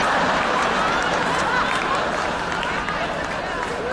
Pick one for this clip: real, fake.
real